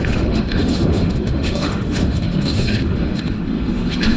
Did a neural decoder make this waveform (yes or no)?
yes